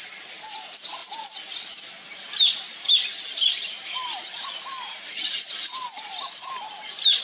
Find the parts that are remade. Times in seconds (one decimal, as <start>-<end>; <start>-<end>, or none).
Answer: none

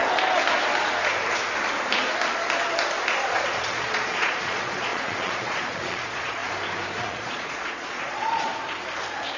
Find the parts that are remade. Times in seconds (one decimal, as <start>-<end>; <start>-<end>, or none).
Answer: 3.2-6.4; 7.0-8.5